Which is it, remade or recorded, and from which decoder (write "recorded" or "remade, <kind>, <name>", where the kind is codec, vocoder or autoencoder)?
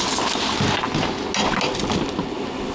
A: recorded